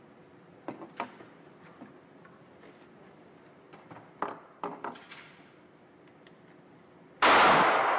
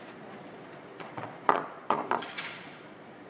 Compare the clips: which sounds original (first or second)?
first